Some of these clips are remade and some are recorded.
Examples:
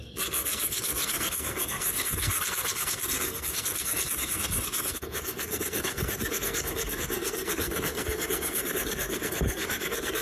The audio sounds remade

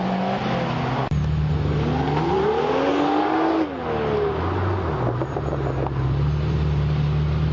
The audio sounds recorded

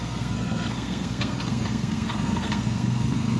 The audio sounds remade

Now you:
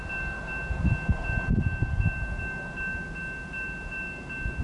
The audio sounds recorded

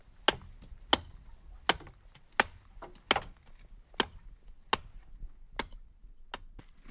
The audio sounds recorded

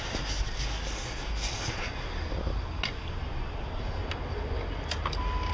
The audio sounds recorded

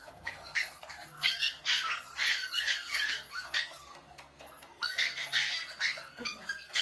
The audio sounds remade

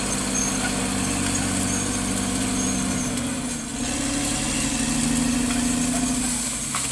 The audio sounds recorded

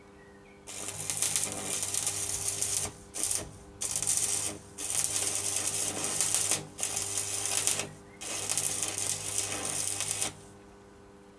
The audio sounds recorded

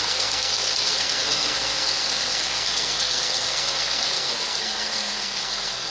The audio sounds remade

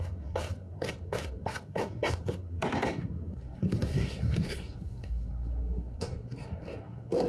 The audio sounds remade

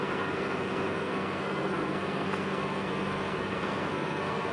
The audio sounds remade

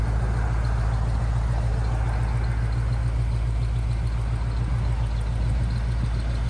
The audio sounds recorded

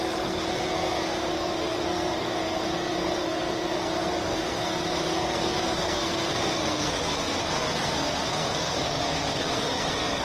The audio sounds remade